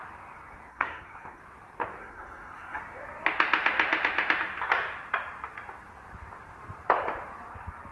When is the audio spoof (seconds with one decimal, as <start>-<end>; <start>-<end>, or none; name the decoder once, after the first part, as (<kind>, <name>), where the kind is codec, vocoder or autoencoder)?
0.7-1.4 (codec, SNAC); 2.0-2.8

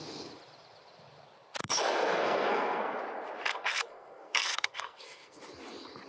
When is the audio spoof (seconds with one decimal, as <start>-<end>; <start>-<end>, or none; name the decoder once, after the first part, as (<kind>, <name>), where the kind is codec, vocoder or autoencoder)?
1.6-3.0 (codec, SNAC); 3.5-5.4

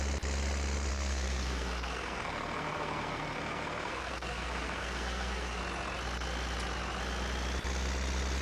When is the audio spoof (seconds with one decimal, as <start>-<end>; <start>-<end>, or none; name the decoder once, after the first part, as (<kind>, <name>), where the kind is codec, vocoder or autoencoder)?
0.9-5.6 (codec, SNAC)

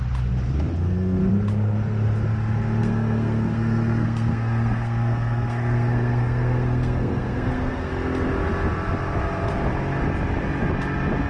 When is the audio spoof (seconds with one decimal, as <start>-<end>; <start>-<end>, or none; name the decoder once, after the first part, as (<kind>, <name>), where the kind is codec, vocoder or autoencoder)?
0.7-1.3 (codec, SNAC); 2.8-7.9

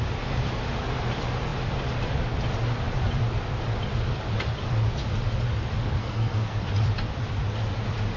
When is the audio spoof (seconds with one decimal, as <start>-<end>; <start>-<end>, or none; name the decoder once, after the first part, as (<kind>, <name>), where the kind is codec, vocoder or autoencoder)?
6.0-6.6 (codec, SNAC)

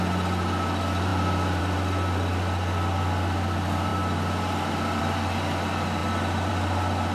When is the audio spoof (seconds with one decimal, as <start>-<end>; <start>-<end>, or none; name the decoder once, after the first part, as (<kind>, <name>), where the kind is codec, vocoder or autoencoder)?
none

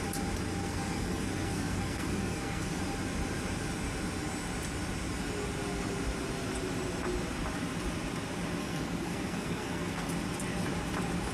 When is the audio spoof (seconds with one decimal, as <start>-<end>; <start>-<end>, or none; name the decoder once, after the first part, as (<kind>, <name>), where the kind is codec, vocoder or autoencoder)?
0.6-2.8 (codec, SNAC); 8.6-10.1